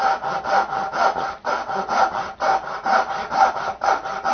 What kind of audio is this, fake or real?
real